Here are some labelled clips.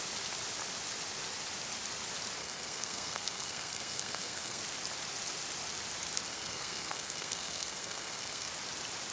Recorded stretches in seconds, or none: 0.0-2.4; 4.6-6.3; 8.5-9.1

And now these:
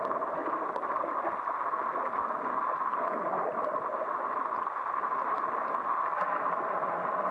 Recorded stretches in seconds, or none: 0.0-7.3